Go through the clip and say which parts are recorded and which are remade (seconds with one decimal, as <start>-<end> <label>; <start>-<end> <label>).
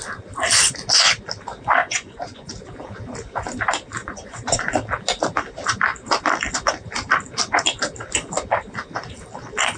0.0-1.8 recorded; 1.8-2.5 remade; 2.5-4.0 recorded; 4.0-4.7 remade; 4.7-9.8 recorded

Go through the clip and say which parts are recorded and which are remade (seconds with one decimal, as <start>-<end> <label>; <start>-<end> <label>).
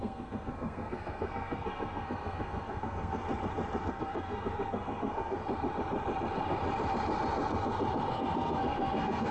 0.0-3.2 remade; 3.2-3.9 recorded; 3.9-5.4 remade; 5.4-8.1 recorded; 8.1-9.3 remade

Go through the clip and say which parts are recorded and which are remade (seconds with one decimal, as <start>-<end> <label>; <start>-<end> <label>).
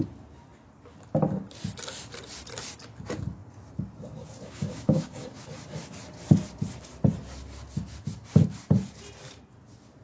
0.0-4.4 recorded; 4.4-5.4 remade; 5.4-10.0 recorded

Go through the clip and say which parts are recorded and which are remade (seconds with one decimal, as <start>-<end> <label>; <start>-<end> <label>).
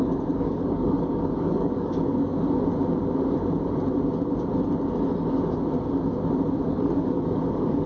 0.0-2.3 remade; 2.3-6.7 recorded; 6.7-7.9 remade